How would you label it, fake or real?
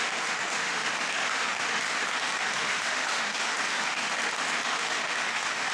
fake